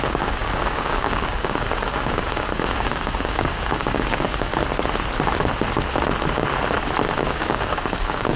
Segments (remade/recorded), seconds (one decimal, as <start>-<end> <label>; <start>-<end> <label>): 0.0-4.5 remade; 4.5-7.2 recorded; 7.2-8.4 remade